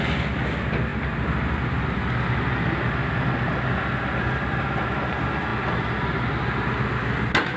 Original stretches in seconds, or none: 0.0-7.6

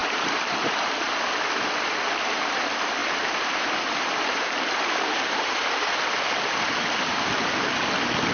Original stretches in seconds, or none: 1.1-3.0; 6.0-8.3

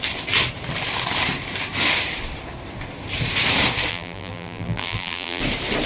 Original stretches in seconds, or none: 0.0-3.9; 5.4-5.9

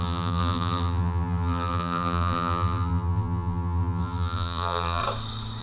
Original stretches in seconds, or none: 5.0-5.6

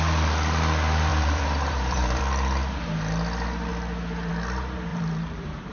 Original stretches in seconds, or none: 0.0-1.1; 2.2-4.9

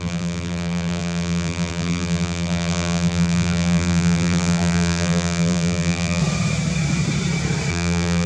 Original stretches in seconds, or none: 6.2-7.7

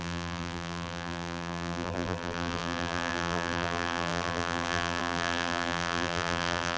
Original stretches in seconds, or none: none